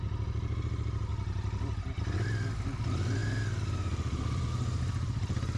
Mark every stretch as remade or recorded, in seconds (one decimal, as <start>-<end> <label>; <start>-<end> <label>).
0.0-5.6 recorded